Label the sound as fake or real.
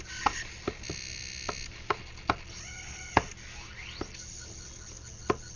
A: real